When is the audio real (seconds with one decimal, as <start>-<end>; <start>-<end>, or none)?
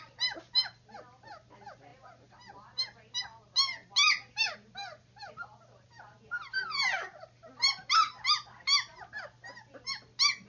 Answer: 0.0-10.5